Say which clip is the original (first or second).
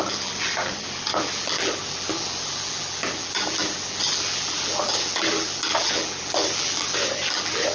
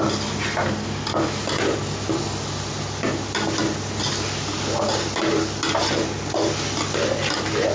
second